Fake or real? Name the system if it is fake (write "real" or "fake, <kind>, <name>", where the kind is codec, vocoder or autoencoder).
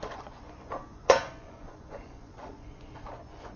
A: fake, vocoder, Vocos